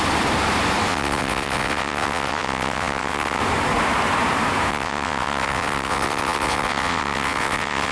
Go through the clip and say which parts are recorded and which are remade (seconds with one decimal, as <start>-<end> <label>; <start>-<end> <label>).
0.0-0.9 recorded; 0.9-3.4 remade; 3.4-4.7 recorded; 4.7-7.9 remade